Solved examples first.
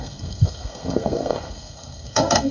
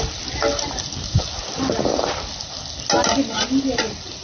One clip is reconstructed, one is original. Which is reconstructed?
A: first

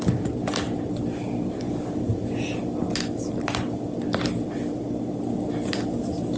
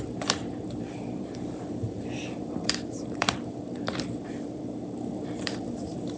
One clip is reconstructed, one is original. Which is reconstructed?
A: second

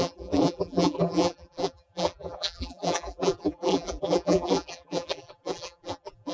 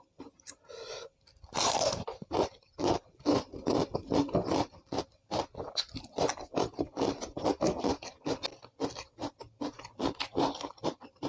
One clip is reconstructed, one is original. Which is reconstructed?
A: first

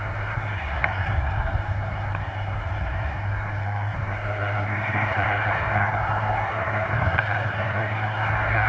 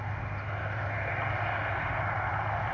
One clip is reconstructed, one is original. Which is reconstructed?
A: first